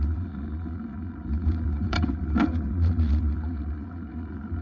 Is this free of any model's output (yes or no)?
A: no